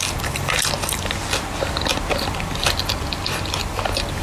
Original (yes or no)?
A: yes